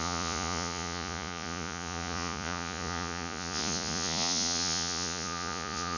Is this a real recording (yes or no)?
no